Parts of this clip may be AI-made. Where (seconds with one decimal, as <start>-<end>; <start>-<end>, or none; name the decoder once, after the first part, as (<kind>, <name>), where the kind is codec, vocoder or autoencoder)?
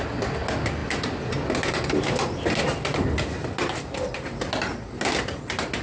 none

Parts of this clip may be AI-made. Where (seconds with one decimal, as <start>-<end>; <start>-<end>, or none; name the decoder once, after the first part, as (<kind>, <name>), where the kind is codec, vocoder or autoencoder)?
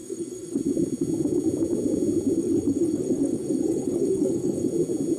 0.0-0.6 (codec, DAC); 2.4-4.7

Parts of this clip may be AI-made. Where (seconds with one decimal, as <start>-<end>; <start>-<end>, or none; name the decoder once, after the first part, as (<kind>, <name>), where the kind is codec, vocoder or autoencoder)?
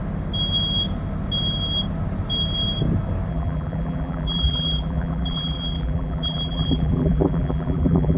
3.3-8.2 (vocoder, BigVGAN v2)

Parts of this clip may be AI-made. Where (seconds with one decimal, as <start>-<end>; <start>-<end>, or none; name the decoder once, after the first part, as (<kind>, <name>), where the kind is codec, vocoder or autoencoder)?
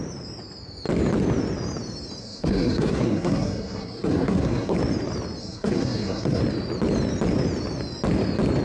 2.2-4.8 (codec, SNAC); 5.4-6.4